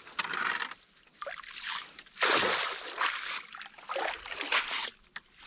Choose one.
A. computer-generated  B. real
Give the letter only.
B